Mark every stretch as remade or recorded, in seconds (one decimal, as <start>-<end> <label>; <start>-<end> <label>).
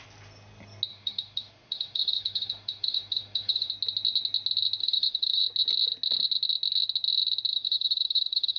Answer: 0.0-0.9 recorded; 0.9-3.7 remade; 3.7-4.8 recorded; 4.8-5.4 remade; 5.4-7.5 recorded; 7.5-8.6 remade